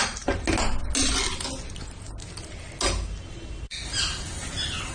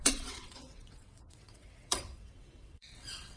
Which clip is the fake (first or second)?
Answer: second